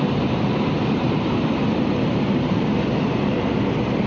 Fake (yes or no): yes